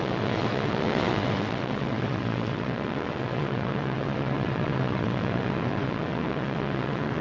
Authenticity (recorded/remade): remade